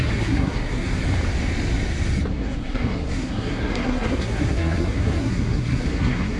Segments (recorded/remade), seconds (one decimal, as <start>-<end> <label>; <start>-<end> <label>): 0.0-1.0 remade; 1.0-2.3 recorded; 2.3-6.4 remade